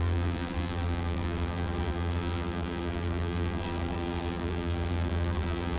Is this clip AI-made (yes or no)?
yes